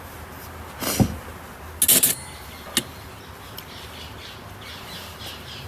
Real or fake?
real